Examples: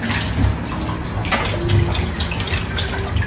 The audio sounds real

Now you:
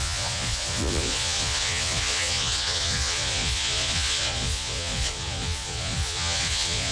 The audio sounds fake